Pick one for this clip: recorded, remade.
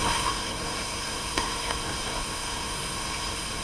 remade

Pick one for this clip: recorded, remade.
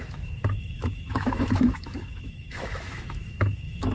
remade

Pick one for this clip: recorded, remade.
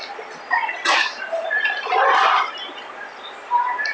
recorded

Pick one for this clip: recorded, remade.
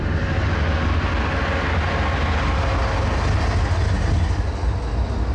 recorded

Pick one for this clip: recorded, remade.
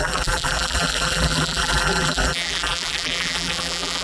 remade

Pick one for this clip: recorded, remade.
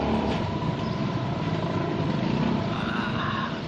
remade